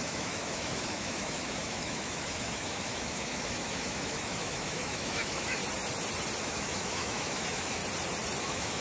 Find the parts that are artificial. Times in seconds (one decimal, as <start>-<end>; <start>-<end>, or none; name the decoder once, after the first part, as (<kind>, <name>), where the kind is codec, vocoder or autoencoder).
0.0-5.6 (autoencoder, DAC-VAE); 6.4-7.8; 8.4-8.8